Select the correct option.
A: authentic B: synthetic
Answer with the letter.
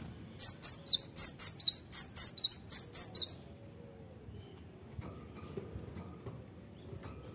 A